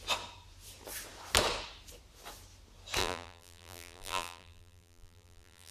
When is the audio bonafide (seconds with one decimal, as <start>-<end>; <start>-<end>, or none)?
0.0-3.0